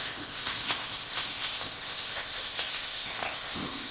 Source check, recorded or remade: remade